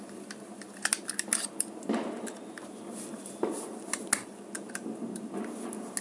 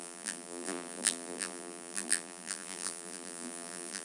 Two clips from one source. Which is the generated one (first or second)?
second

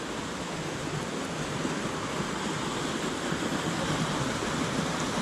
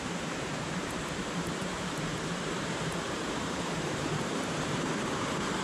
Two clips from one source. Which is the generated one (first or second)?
second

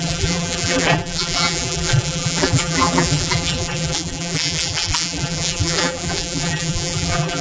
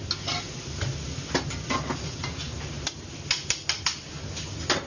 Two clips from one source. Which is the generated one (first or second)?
first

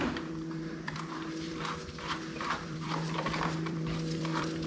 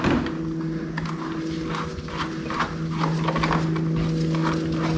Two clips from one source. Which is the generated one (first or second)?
first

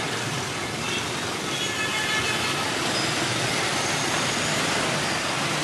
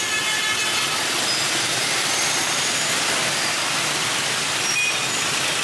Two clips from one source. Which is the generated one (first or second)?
first